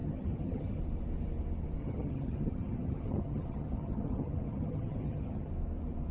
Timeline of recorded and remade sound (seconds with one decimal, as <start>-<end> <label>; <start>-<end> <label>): 0.0-0.8 remade; 0.8-1.8 recorded; 1.8-5.5 remade; 5.5-6.1 recorded

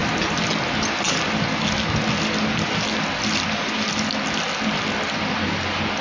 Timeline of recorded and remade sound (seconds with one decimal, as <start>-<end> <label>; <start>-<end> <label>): 0.0-6.0 recorded

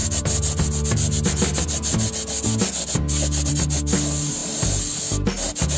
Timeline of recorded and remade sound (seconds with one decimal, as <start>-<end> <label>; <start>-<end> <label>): 0.0-5.8 recorded

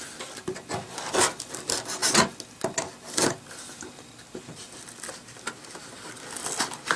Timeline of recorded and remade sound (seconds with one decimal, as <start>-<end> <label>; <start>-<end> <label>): 0.0-7.0 recorded

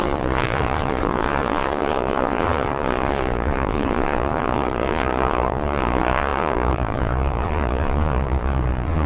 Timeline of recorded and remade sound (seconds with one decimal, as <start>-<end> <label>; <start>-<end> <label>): 0.0-9.1 remade

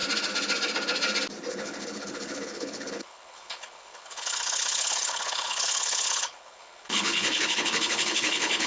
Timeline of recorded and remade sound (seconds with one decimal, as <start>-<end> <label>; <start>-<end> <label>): 0.0-1.5 recorded; 1.5-8.7 remade

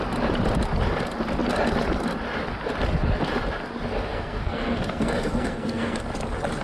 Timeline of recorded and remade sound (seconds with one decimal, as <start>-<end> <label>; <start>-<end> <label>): 0.0-4.1 recorded; 4.1-6.0 remade; 6.0-6.6 recorded

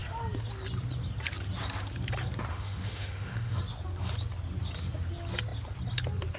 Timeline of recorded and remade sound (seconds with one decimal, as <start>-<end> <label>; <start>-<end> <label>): 0.0-2.5 recorded; 2.5-3.6 remade; 3.6-6.4 recorded